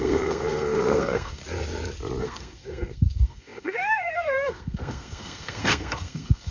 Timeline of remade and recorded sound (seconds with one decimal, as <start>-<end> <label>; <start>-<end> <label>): 0.0-1.4 remade; 1.4-2.2 recorded; 2.2-6.5 remade